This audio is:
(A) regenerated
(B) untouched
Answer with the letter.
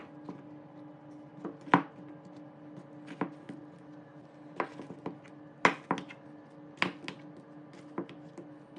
B